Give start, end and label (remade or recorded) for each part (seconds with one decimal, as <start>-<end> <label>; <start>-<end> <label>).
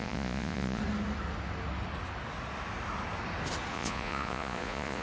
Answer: 0.0-0.8 remade; 0.8-3.7 recorded; 3.7-5.0 remade